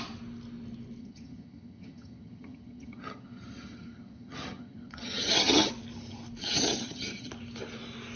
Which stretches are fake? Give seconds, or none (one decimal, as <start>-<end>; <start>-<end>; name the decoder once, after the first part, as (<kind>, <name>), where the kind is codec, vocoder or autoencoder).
1.0-5.7 (vocoder, HiFi-GAN); 6.4-7.3